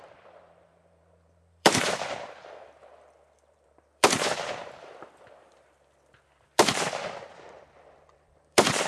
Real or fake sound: fake